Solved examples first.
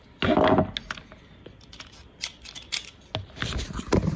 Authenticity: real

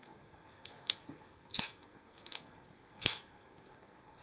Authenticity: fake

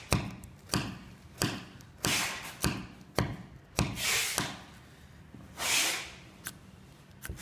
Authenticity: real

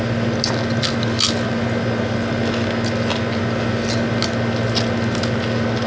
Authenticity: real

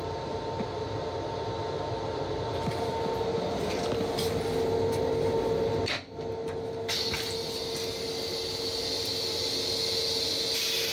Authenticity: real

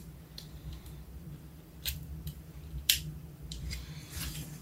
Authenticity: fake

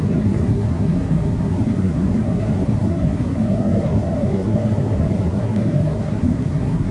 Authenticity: fake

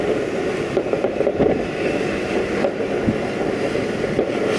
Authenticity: real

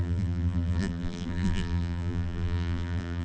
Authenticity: fake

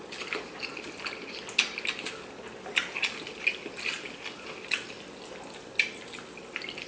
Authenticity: real